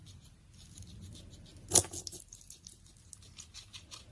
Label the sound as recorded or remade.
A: recorded